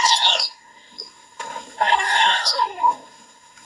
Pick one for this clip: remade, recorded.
remade